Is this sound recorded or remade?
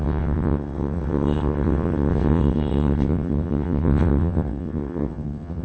remade